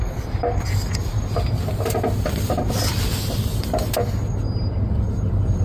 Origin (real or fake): real